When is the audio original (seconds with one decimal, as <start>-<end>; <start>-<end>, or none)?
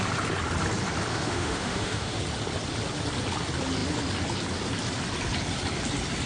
0.0-1.1; 2.2-6.3